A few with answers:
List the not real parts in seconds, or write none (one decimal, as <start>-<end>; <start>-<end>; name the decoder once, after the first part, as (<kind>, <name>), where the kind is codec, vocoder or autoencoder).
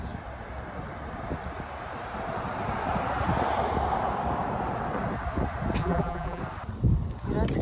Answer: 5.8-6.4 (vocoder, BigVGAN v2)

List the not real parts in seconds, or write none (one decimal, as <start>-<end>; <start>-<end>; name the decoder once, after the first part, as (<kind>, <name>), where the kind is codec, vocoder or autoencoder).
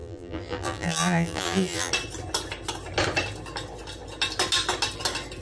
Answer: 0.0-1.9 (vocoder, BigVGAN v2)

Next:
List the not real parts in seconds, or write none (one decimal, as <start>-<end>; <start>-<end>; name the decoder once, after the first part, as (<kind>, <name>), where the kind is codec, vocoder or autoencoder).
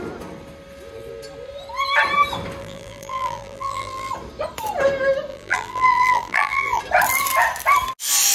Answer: 2.6-4.1 (vocoder, BigVGAN v2); 5.3-6.8